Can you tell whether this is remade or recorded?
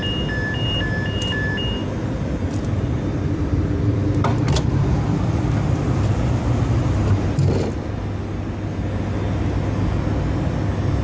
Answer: recorded